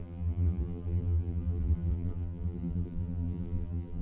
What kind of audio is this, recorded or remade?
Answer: remade